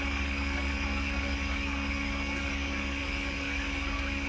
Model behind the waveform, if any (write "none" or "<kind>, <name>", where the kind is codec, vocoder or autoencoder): codec, DAC